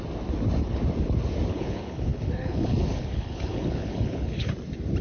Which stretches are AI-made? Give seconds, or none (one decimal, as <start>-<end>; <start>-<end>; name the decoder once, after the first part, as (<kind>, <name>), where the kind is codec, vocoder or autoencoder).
1.5-4.5 (codec, HILCodec)